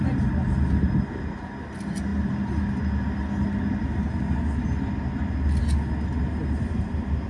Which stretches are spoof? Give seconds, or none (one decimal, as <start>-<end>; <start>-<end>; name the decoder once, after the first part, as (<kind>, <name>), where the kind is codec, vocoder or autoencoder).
none